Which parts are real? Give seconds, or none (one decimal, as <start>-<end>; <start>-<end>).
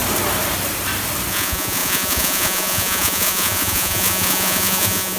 0.0-1.3